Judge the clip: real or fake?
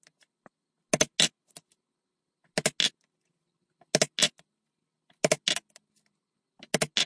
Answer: real